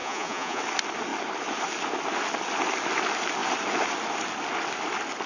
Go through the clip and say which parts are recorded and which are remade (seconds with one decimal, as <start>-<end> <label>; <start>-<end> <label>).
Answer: 0.0-0.6 remade; 0.6-5.3 recorded